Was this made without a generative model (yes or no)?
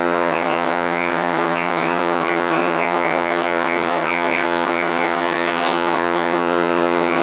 no